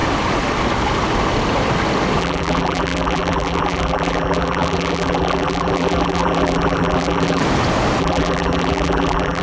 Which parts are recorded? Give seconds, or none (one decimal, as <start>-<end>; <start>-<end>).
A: 0.0-2.2; 7.4-8.0